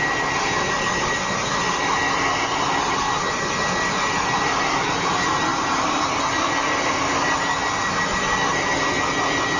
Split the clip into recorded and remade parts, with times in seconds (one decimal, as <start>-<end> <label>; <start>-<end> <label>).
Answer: 0.0-5.5 recorded; 5.5-6.1 remade; 6.1-9.6 recorded